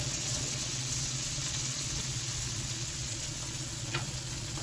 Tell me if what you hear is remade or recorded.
remade